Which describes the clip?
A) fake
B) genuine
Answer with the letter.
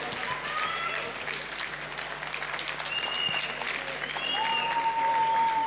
B